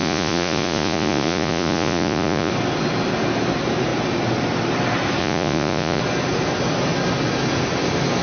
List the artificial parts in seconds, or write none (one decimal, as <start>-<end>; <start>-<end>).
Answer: 0.0-2.5; 5.2-6.0